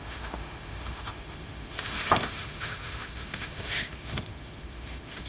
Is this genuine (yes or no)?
no